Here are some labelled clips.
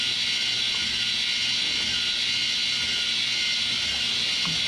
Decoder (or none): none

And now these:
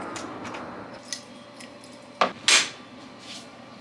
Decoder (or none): none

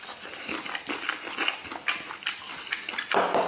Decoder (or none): none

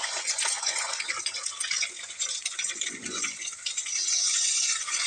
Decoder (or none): vocoder, Vocos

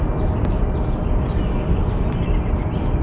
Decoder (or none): none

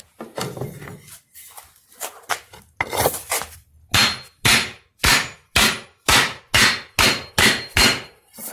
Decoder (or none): none